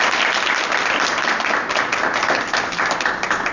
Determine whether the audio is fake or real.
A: real